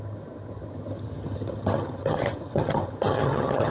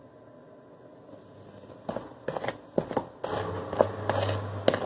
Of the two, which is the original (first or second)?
second